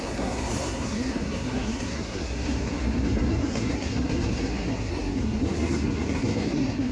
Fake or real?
fake